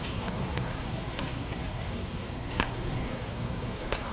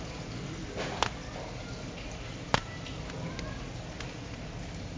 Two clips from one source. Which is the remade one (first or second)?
first